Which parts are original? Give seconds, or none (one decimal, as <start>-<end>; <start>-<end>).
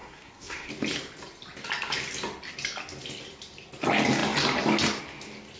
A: 0.7-5.6